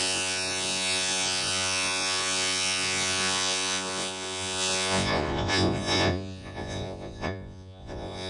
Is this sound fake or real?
fake